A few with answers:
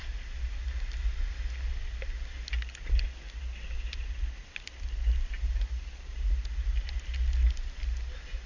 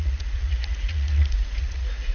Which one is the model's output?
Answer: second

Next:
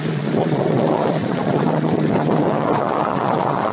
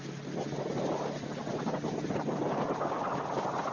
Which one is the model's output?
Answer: first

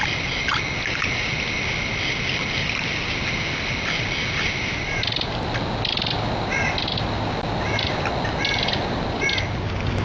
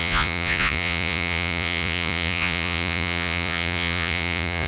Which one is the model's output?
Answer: second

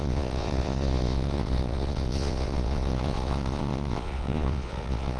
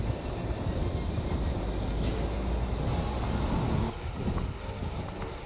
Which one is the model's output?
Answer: first